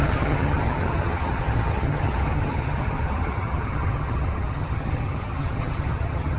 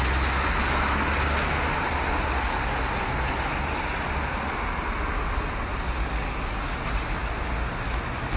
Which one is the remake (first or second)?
first